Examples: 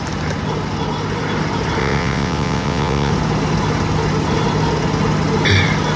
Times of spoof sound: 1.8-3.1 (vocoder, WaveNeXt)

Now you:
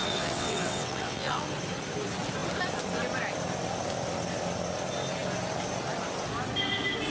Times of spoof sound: 0.0-1.5 (vocoder, WaveNeXt)

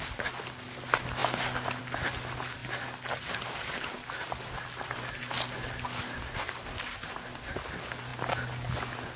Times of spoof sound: none